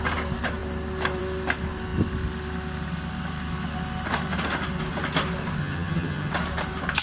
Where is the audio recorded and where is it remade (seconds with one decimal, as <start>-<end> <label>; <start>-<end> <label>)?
0.0-5.6 recorded; 5.6-6.3 remade; 6.3-7.0 recorded